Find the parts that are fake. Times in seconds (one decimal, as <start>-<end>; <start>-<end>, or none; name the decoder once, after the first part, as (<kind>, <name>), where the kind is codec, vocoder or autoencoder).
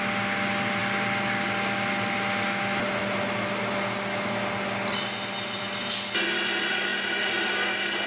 none